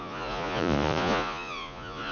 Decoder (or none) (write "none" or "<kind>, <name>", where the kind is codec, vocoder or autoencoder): vocoder, Vocos